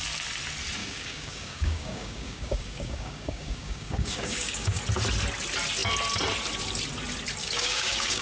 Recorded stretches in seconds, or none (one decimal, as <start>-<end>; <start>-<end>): 0.0-0.8; 4.8-7.4